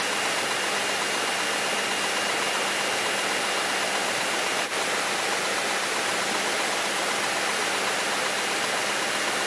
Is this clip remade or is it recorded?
recorded